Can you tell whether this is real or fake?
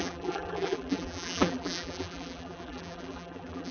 fake